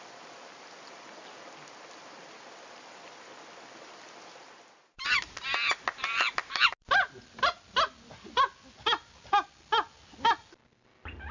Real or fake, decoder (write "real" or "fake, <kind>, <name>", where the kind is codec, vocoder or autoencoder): real